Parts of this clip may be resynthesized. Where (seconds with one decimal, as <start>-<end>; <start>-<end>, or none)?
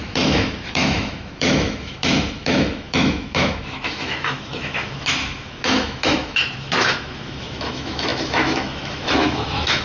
0.0-9.8